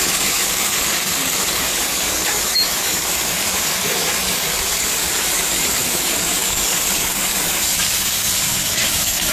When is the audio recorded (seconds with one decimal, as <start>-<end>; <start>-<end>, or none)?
none